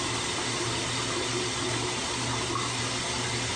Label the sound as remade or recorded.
recorded